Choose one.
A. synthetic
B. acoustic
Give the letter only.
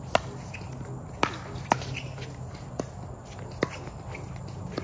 B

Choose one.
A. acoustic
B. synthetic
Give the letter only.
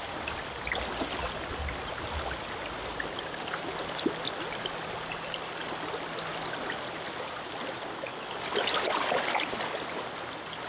A